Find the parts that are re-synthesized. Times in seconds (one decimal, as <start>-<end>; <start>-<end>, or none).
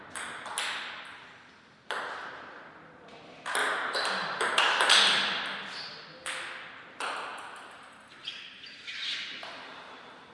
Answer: 3.6-4.9; 7.3-10.3